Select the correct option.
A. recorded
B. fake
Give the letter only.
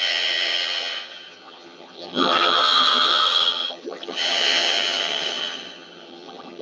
B